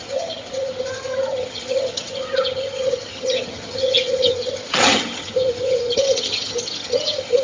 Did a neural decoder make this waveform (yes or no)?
yes